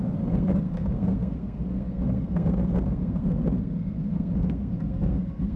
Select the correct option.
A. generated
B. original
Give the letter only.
A